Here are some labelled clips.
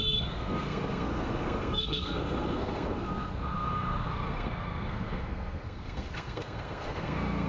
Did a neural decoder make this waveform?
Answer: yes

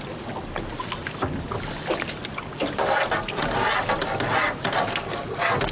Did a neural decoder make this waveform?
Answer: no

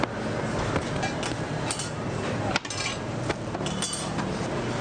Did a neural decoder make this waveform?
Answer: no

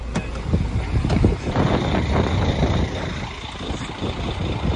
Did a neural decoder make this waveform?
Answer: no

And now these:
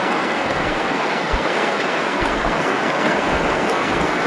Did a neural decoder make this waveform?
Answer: yes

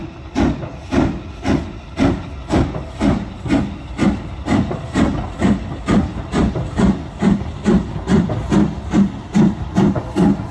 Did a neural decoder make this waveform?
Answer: no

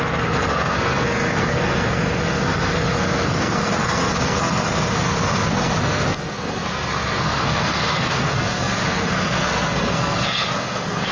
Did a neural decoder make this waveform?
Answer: yes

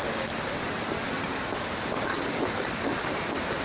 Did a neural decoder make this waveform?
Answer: no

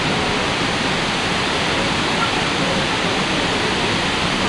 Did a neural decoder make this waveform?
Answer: no